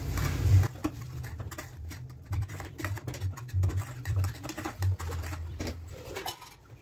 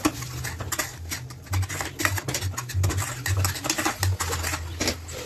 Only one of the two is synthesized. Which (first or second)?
first